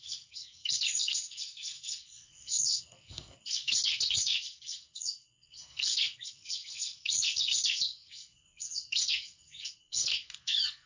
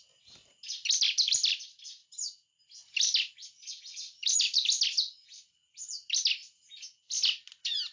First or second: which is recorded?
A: second